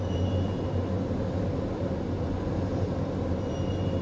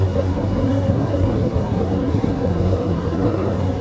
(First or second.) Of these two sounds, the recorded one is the first